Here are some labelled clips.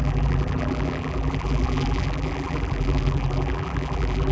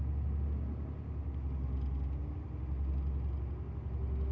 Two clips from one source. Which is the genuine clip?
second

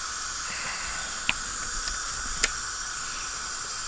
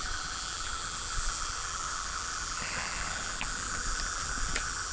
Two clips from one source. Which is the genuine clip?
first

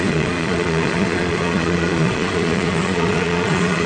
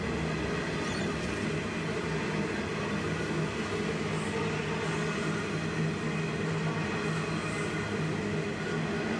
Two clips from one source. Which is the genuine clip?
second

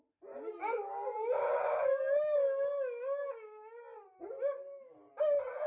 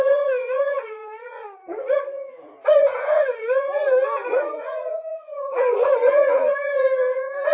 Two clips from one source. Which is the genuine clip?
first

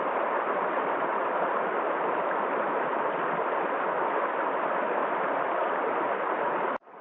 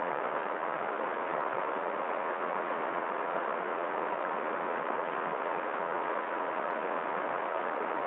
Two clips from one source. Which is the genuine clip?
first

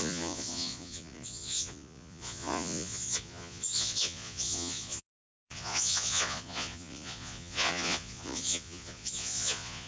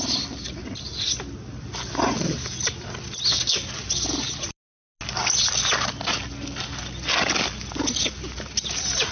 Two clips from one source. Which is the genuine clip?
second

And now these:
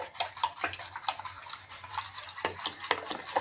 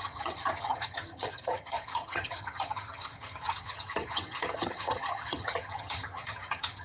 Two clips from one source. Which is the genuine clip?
first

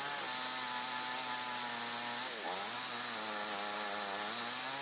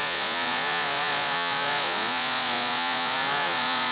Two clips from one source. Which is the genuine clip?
first